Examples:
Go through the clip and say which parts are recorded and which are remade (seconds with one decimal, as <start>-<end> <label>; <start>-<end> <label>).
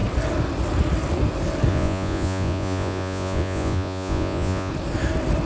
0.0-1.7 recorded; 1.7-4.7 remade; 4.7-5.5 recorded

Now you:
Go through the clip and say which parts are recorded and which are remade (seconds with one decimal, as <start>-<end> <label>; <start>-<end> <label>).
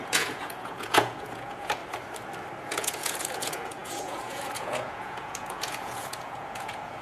0.0-1.8 remade; 1.8-2.6 recorded; 2.6-7.0 remade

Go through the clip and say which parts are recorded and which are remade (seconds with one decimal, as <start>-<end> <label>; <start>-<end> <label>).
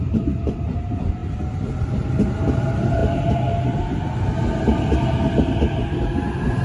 0.0-6.6 recorded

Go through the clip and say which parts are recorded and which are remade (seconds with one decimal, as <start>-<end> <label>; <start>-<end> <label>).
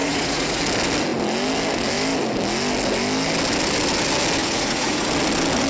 0.0-0.6 remade; 0.6-4.4 recorded; 4.4-5.1 remade; 5.1-5.7 recorded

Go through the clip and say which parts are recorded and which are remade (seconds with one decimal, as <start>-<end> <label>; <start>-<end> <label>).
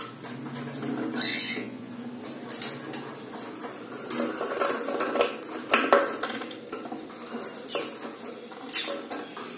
0.0-1.3 recorded; 1.3-1.9 remade; 1.9-9.6 recorded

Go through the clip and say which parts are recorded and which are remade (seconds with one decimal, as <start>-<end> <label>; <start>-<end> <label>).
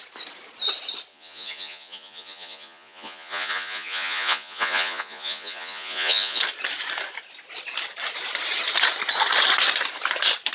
0.0-1.1 recorded; 1.1-6.4 remade; 6.4-10.5 recorded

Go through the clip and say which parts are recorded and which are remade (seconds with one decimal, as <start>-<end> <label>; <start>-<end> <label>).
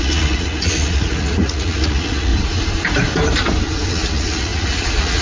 0.0-2.3 remade; 2.3-3.9 recorded; 3.9-5.2 remade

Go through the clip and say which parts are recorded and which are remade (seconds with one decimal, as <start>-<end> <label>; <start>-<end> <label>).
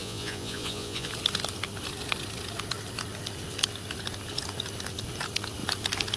0.0-1.1 remade; 1.1-6.2 recorded